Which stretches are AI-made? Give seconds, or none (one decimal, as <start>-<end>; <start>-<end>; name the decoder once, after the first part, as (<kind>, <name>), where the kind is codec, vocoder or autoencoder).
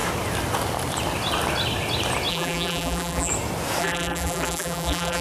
2.3-3.3 (vocoder, BigVGAN v2); 3.8-5.2